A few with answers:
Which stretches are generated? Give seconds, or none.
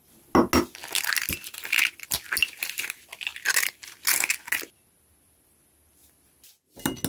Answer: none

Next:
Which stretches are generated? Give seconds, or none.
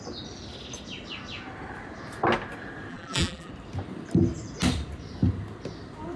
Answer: 2.9-3.5 (vocoder, BigVGAN v2)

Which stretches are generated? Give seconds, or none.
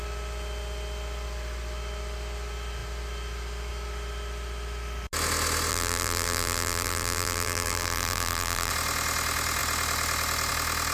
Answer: 5.7-8.7 (vocoder, BigVGAN v2)